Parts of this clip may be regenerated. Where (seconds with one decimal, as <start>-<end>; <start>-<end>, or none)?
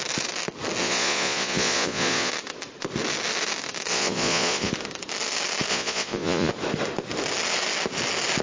0.8-2.3; 3.9-4.7; 5.7-6.5